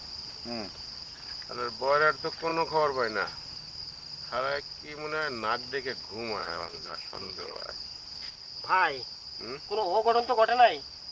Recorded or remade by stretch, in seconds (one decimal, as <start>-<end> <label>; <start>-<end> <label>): 0.0-6.4 recorded; 6.4-7.7 remade; 7.7-11.1 recorded